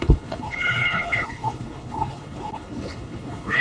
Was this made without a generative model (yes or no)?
no